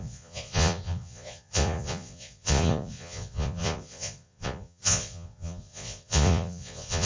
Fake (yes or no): yes